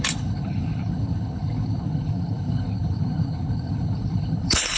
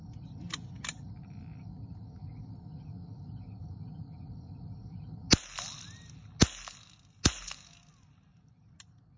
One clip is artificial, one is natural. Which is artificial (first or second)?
first